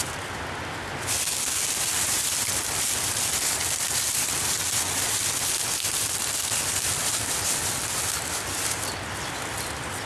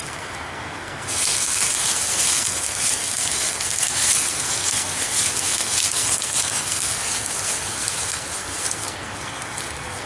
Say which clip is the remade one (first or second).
second